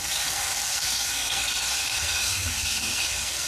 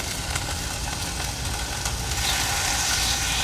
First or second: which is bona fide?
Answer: second